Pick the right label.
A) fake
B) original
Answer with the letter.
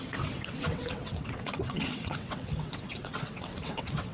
A